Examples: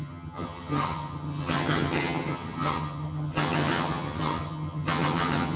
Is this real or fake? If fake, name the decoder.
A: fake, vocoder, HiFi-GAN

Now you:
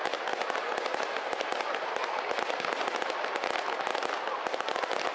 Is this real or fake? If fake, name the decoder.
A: real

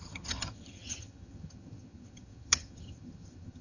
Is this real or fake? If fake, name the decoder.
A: fake, vocoder, HiFi-GAN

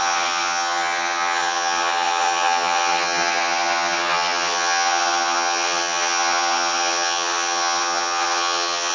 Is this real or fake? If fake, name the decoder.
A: fake, vocoder, HiFi-GAN